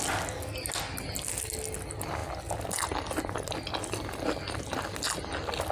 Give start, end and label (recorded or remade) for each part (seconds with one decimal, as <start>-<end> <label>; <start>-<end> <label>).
0.0-5.7 recorded